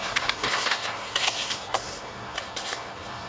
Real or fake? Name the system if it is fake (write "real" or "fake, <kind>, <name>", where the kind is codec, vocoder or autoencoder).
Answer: fake, codec, SNAC